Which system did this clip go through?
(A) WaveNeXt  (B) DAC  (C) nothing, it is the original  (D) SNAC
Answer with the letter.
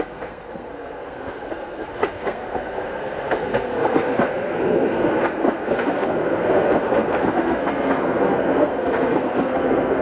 D